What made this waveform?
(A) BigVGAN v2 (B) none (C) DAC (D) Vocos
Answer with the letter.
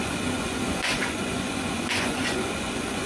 D